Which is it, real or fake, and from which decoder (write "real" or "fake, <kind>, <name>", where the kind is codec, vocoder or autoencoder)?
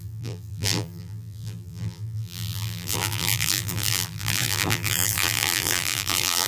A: fake, vocoder, BigVGAN v2